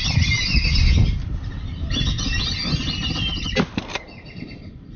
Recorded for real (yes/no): yes